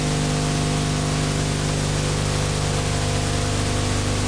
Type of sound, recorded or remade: recorded